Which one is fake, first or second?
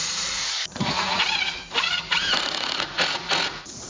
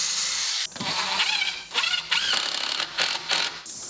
first